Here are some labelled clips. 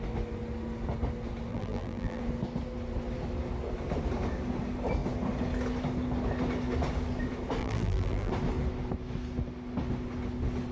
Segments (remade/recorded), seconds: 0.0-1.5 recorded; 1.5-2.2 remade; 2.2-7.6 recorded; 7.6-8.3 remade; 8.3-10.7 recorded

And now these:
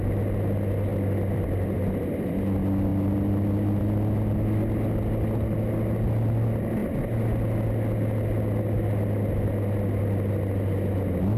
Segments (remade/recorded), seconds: 0.0-0.9 recorded; 0.9-2.3 remade; 2.3-2.9 recorded; 2.9-3.8 remade; 3.8-11.4 recorded

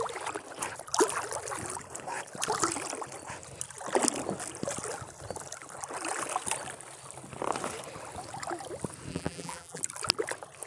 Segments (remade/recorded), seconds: 0.0-9.1 recorded; 9.1-9.8 remade; 9.8-10.7 recorded

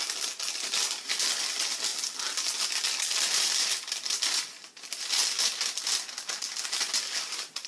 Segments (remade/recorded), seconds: 0.0-1.9 recorded; 1.9-3.9 remade; 3.9-7.7 recorded

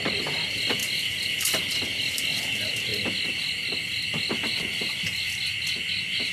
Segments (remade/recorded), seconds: 0.0-0.8 recorded; 0.8-1.7 remade; 1.7-2.9 recorded; 2.9-5.4 remade; 5.4-6.3 recorded

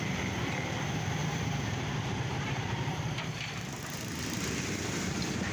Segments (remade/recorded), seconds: 0.0-1.2 recorded; 1.2-3.8 remade; 3.8-5.5 recorded

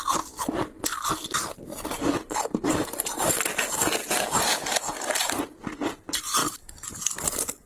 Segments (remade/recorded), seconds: 0.0-1.7 recorded; 1.7-3.3 remade; 3.3-4.0 recorded; 4.0-5.3 remade; 5.3-7.7 recorded